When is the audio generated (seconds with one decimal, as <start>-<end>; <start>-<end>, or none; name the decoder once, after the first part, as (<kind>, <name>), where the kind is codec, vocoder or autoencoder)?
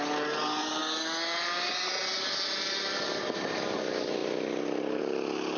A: none